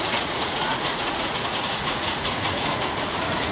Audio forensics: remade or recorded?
remade